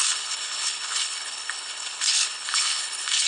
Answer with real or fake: fake